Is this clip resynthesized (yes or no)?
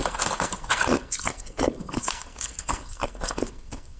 yes